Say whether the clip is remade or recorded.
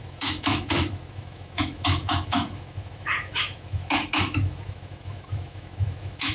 remade